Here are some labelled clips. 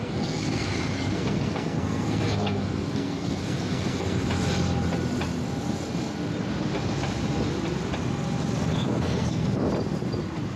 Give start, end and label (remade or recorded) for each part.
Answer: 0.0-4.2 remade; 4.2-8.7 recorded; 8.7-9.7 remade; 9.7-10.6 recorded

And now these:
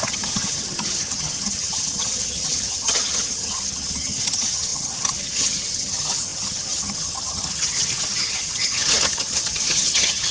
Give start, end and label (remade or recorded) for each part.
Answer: 0.0-10.3 remade

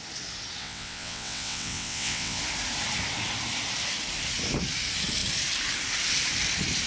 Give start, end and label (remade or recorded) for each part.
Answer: 0.0-0.6 recorded; 0.6-2.4 remade; 2.4-6.9 recorded

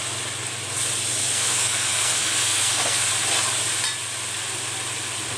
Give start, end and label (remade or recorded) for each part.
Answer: 0.0-1.2 recorded; 1.2-3.1 remade; 3.1-5.4 recorded

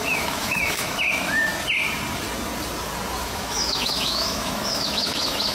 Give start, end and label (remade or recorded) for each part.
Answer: 0.0-1.5 remade; 1.5-3.2 recorded; 3.2-5.5 remade

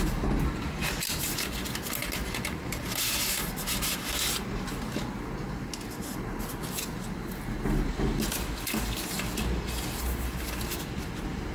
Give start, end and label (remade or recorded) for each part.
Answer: 0.0-11.5 recorded

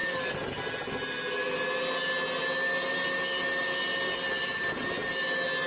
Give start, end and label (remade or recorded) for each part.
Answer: 0.0-5.7 recorded